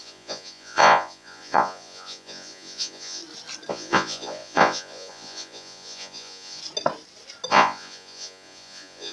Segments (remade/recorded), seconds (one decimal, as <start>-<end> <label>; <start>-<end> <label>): 0.0-3.2 remade; 3.2-3.7 recorded; 3.7-6.6 remade; 6.6-7.5 recorded; 7.5-9.1 remade